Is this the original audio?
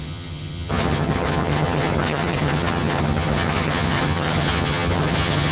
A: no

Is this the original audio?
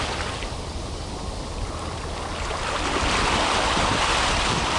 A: yes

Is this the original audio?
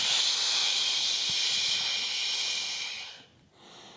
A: yes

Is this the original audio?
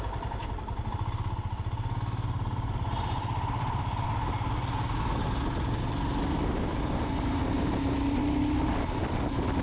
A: yes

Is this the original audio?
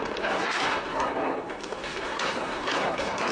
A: no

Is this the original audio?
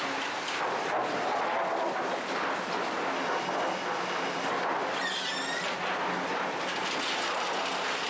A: yes